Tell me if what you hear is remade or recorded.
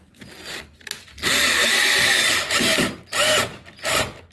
recorded